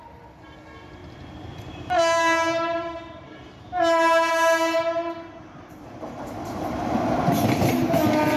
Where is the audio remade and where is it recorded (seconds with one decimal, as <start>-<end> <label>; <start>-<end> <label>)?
0.0-1.0 recorded; 1.0-4.3 remade; 4.3-8.4 recorded